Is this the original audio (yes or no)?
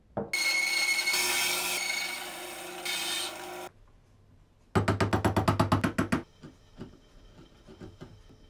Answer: yes